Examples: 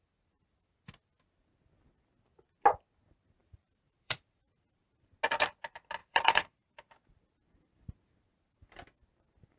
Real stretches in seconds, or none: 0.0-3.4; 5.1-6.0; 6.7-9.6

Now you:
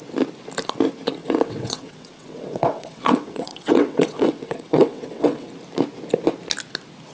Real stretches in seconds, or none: 0.0-1.2; 5.5-7.1

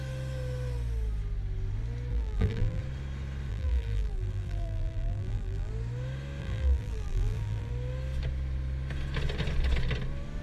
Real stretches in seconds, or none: 0.0-2.1; 2.8-3.5; 5.7-6.4; 7.7-10.4

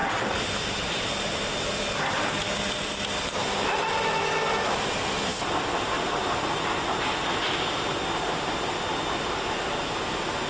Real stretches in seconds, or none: 0.0-10.5

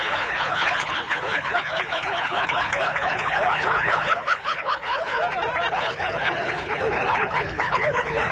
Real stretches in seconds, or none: 5.2-5.7

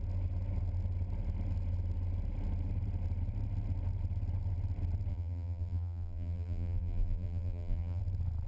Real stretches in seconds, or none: 0.0-5.1; 8.0-8.5